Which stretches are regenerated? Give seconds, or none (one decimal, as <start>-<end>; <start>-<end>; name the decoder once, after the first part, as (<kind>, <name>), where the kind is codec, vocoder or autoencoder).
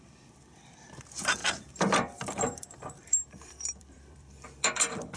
0.0-5.2 (vocoder, BigVGAN v2)